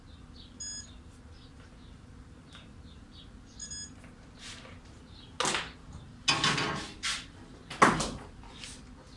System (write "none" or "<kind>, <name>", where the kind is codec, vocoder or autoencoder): none